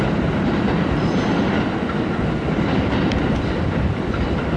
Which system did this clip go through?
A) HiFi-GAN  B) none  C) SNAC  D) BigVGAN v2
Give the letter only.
D